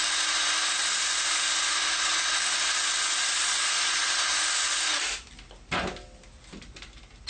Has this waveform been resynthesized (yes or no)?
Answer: no